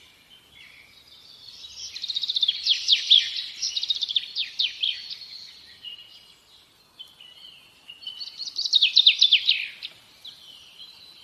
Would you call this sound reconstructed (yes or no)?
yes